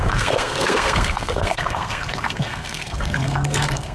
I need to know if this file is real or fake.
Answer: fake